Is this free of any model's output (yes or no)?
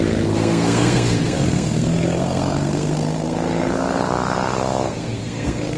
no